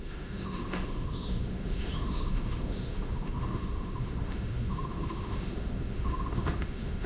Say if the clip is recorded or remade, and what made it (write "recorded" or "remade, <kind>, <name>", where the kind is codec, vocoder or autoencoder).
remade, autoencoder, DAC-VAE